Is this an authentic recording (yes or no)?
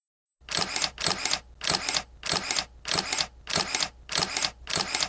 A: yes